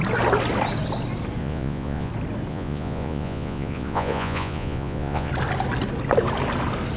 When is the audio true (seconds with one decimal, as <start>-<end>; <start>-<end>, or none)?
0.0-1.4; 2.1-2.5; 5.3-7.0

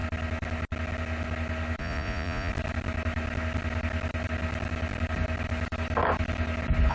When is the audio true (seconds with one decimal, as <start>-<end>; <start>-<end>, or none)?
0.0-1.8; 2.5-6.9

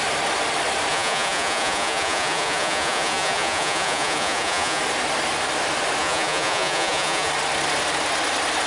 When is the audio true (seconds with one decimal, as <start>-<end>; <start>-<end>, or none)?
0.0-0.9; 4.8-6.0; 7.3-8.7